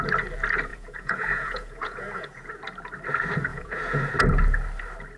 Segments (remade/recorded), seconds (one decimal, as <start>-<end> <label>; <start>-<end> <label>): 0.0-0.7 recorded; 0.7-2.5 remade; 2.5-3.5 recorded; 3.5-4.1 remade; 4.1-5.2 recorded